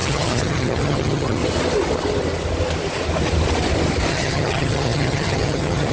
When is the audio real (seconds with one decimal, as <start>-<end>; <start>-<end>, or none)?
1.4-4.1